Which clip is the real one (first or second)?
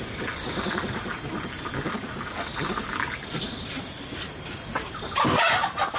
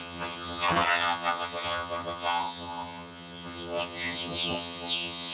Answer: first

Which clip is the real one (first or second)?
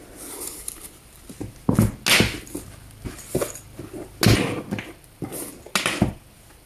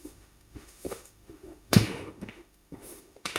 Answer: first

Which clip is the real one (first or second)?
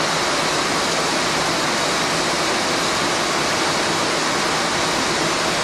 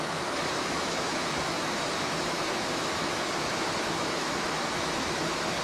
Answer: first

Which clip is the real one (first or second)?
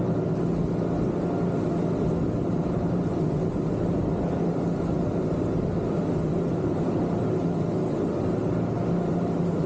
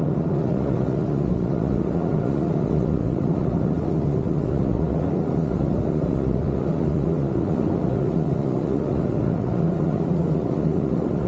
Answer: first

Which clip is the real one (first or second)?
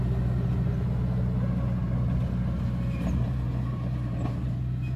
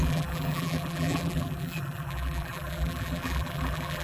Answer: first